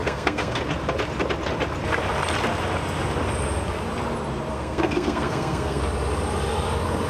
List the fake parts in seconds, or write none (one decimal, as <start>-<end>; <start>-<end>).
0.0-0.6; 4.5-5.8